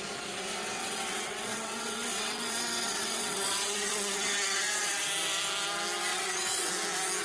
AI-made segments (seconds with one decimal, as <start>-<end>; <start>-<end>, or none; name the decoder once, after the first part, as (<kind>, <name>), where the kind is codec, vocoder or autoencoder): 0.8-5.1 (vocoder, WaveNeXt); 6.1-6.7